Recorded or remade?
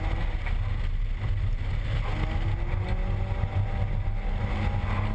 recorded